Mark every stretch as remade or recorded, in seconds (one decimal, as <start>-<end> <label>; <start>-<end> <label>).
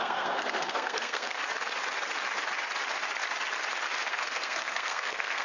0.0-1.4 remade; 1.4-4.1 recorded; 4.1-5.4 remade